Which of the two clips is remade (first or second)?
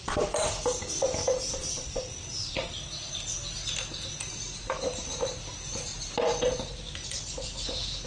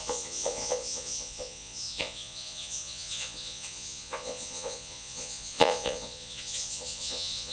second